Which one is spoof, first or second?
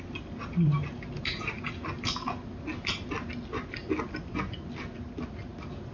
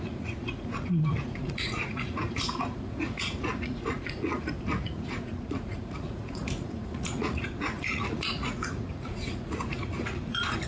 second